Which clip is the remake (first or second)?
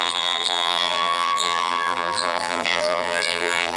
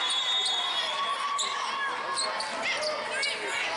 first